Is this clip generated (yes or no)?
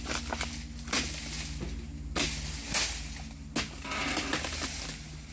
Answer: no